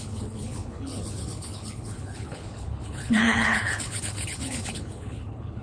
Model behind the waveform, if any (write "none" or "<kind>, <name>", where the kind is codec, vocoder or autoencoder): codec, HILCodec